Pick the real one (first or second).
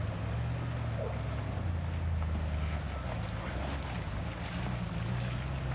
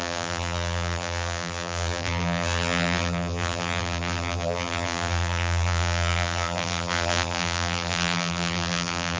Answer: first